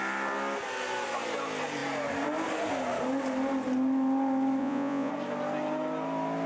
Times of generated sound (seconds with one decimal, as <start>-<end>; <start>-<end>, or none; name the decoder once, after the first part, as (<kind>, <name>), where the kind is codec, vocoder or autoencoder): 4.6-5.1 (vocoder, Vocos)